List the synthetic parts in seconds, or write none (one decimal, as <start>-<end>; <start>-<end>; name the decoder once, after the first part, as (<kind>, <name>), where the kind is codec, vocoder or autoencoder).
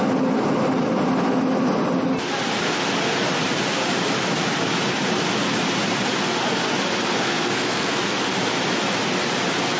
7.1-8.0 (codec, SNAC)